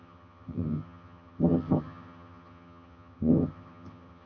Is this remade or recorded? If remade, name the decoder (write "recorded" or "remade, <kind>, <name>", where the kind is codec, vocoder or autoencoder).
remade, vocoder, HiFi-GAN